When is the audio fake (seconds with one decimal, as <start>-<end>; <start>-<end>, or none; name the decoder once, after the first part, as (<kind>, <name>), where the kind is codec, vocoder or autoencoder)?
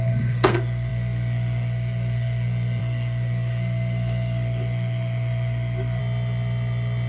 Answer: 0.0-6.0 (codec, SNAC)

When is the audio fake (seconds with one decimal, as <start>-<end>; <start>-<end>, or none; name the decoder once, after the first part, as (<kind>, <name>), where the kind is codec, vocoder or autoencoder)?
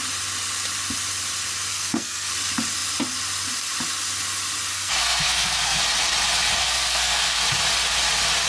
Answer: 1.7-2.3 (codec, SNAC); 4.7-5.8; 6.6-7.4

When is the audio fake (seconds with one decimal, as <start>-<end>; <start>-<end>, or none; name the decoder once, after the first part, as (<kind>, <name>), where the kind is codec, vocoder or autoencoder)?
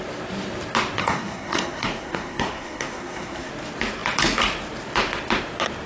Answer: 1.0-3.5 (codec, SNAC)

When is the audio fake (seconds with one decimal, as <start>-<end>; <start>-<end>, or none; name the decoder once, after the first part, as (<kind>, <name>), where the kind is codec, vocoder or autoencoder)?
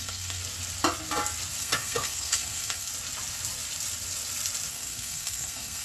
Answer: 0.0-0.4 (codec, SNAC); 1.6-2.9; 4.7-5.8